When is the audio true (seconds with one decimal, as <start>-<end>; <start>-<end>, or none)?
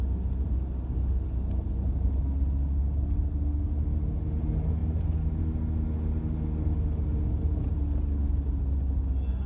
0.0-7.1; 7.7-9.5